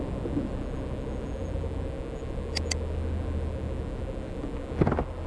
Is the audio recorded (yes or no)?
yes